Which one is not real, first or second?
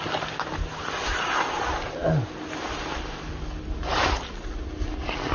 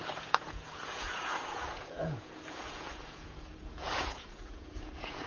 second